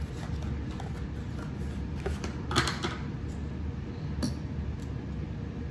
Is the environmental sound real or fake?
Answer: real